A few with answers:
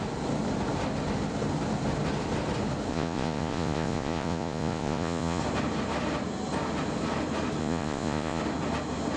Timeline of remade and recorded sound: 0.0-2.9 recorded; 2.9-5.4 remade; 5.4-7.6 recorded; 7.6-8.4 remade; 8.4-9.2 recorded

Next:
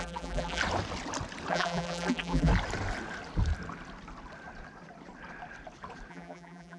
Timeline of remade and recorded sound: 0.0-0.6 remade; 0.6-1.5 recorded; 1.5-2.5 remade; 2.5-6.1 recorded; 6.1-6.8 remade